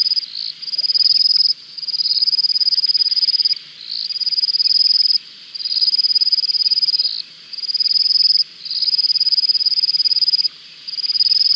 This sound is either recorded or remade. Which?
remade